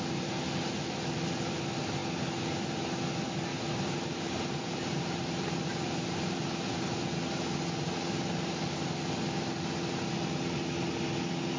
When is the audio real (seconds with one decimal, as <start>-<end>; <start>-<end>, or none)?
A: 0.0-3.5; 7.1-11.6